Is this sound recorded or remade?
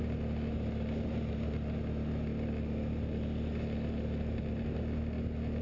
recorded